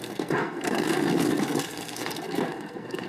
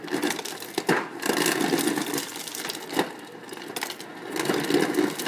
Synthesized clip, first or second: first